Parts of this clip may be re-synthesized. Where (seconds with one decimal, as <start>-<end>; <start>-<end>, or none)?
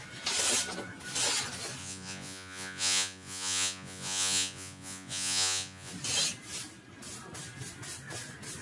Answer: 1.8-5.9